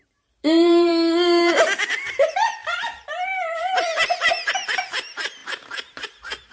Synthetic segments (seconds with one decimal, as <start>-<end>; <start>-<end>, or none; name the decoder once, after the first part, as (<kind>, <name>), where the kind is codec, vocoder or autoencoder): 0.0-0.9 (vocoder, BigVGAN v2); 2.1-6.5